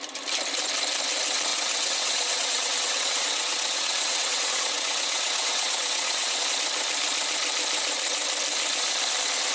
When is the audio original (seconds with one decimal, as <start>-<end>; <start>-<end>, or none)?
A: 0.0-1.5; 6.4-9.5